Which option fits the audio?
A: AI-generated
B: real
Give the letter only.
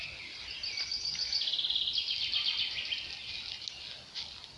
B